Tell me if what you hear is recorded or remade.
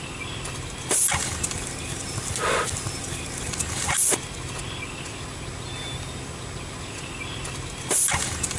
recorded